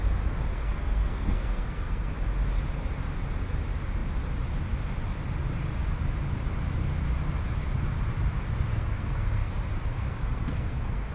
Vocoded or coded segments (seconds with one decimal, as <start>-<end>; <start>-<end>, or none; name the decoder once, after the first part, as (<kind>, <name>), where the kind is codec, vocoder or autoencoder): 0.5-2.1 (codec, SNAC); 8.7-9.5; 9.9-11.1